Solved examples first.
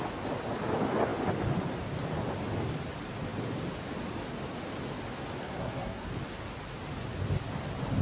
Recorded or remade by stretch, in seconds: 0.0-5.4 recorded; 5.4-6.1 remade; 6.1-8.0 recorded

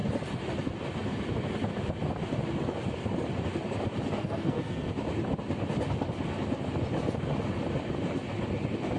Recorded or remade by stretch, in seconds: 0.0-4.2 recorded; 4.2-4.9 remade; 4.9-9.0 recorded

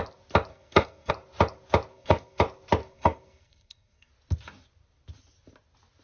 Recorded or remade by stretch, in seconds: 0.0-0.5 recorded; 0.5-1.1 remade; 1.1-1.9 recorded; 1.9-2.4 remade; 2.4-2.8 recorded; 2.8-4.1 remade; 4.1-6.0 recorded

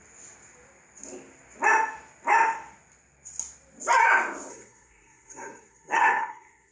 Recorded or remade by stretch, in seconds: 0.0-4.5 recorded; 4.5-6.7 remade

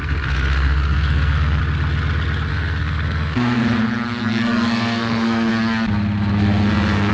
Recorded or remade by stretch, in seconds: 0.0-1.6 remade; 1.6-2.5 recorded; 2.5-3.6 remade; 3.6-4.2 recorded; 4.2-5.5 remade; 5.5-6.3 recorded; 6.3-7.1 remade

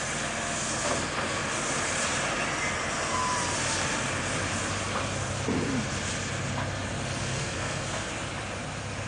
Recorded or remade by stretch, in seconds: 0.0-7.2 recorded; 7.2-8.1 remade; 8.1-9.1 recorded